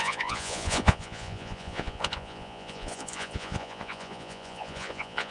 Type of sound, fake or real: fake